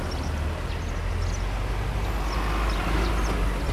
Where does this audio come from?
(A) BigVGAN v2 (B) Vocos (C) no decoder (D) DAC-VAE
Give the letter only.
C